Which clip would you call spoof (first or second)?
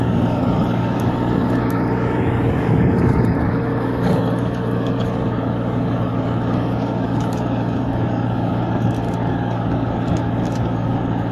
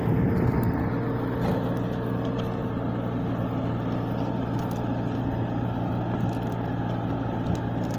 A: first